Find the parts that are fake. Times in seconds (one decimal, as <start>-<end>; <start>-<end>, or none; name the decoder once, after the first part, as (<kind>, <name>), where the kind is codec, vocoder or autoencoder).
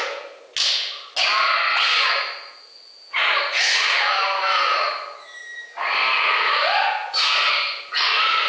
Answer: none